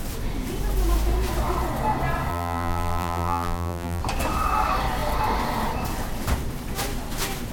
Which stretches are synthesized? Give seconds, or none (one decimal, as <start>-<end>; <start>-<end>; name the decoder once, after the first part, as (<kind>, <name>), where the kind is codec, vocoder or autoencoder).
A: 2.3-4.0 (vocoder, BigVGAN v2)